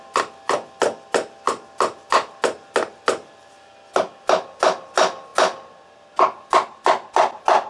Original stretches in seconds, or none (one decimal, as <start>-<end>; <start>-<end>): 0.0-7.7